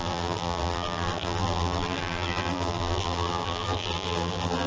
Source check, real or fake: fake